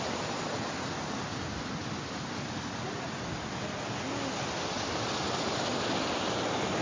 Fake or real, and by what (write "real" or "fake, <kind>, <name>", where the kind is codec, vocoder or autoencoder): real